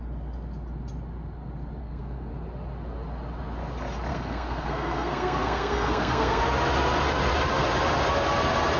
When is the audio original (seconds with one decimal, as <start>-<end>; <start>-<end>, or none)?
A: 0.0-1.8; 2.3-4.1; 6.4-8.8